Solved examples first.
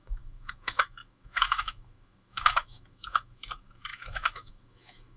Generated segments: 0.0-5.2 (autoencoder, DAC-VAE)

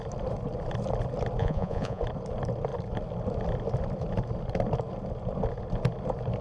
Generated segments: 1.4-2.0 (vocoder, Vocos)

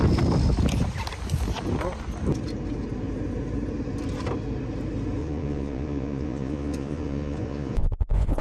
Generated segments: 5.2-8.4 (vocoder, Vocos)

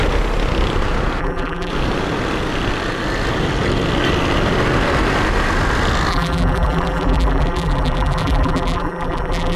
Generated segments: 1.2-1.7 (vocoder, BigVGAN v2); 6.1-9.6

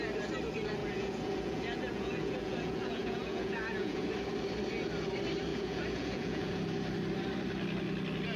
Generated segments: 0.8-4.1 (vocoder, Vocos); 5.5-6.6